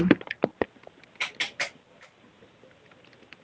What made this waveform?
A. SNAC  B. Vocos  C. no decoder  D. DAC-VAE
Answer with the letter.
C